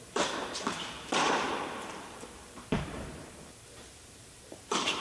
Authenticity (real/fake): fake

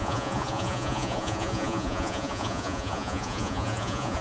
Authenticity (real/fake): fake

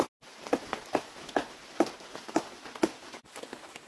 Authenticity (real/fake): real